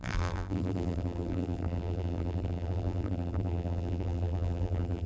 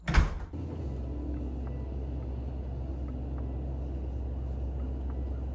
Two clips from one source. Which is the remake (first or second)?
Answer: first